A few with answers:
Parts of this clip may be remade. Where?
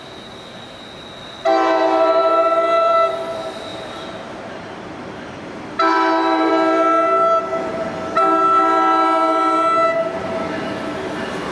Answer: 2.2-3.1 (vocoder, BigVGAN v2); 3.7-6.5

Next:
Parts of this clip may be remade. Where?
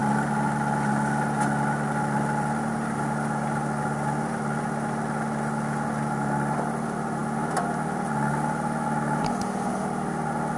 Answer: none